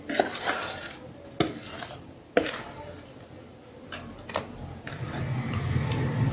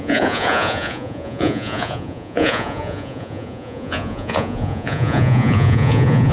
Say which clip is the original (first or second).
first